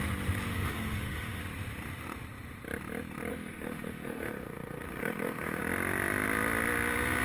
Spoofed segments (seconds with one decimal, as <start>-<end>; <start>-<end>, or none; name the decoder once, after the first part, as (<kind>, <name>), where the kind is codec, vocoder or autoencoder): 0.5-1.4 (autoencoder, DAC-VAE); 3.3-5.6